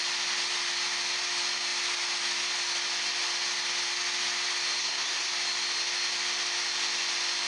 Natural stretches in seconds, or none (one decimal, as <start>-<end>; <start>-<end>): 0.0-4.8; 5.3-7.5